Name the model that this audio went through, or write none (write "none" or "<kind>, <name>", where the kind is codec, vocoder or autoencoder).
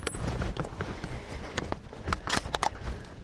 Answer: vocoder, Vocos